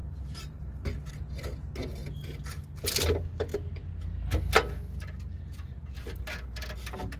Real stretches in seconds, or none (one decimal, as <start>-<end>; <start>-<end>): 1.1-7.2